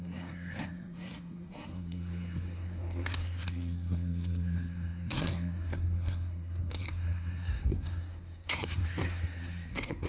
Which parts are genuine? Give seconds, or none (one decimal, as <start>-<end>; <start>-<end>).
none